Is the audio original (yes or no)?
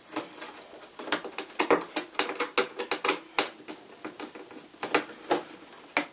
yes